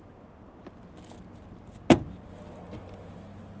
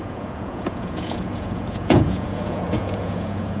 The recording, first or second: first